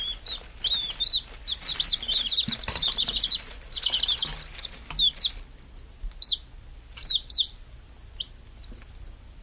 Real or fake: real